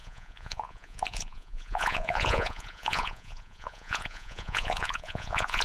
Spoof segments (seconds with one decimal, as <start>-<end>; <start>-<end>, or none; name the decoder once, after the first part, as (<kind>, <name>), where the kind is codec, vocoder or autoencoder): 0.0-5.6 (vocoder, Vocos)